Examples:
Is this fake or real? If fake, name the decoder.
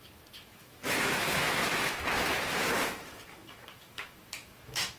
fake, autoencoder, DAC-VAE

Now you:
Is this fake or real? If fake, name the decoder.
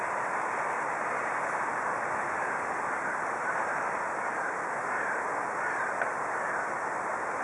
real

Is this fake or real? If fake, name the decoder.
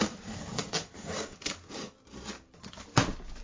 real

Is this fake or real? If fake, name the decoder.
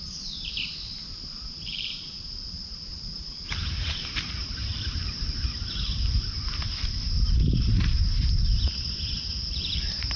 fake, vocoder, BigVGAN v2